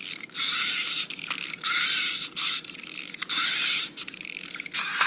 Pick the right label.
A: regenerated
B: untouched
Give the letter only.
B